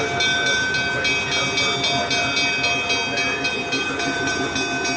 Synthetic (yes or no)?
no